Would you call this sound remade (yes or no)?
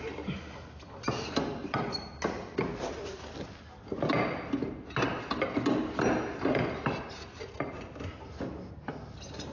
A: no